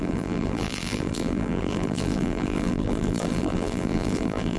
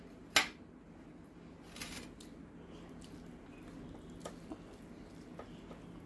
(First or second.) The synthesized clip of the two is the first